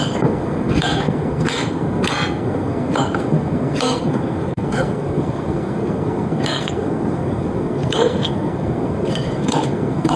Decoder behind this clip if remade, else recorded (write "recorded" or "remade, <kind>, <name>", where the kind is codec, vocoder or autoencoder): remade, codec, SNAC